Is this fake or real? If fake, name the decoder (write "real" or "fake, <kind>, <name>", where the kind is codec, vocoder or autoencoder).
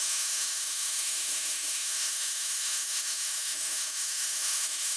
fake, autoencoder, DAC-VAE